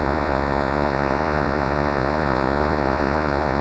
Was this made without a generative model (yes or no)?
no